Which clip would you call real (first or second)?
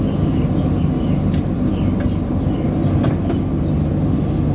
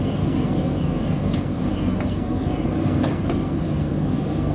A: first